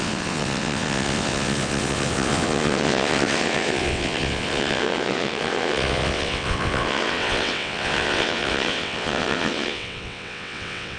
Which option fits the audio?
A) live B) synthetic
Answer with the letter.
B